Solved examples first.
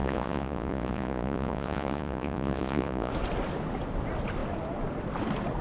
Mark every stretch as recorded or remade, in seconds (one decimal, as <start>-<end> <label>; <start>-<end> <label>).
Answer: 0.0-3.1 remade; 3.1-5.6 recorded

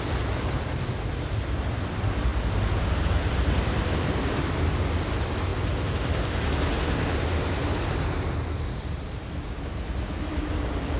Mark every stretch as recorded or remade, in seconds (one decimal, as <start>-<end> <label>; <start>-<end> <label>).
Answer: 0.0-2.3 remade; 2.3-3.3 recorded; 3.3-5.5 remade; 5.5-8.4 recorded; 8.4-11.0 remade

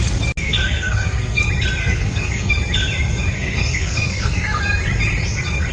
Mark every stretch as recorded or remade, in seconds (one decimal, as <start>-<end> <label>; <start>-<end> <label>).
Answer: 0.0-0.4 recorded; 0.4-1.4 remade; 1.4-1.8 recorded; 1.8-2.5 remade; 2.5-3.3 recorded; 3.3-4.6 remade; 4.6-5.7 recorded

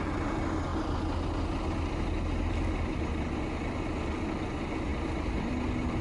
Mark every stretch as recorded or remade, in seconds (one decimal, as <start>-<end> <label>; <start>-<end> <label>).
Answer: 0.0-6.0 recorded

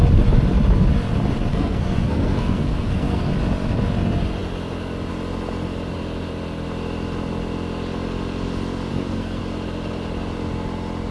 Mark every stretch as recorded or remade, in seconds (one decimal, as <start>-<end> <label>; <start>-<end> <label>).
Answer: 0.0-1.5 recorded; 1.5-3.3 remade; 3.3-8.9 recorded; 8.9-9.4 remade; 9.4-11.1 recorded

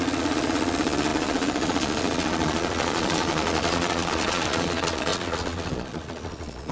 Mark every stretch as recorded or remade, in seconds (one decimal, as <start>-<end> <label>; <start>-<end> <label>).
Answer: 0.0-6.7 remade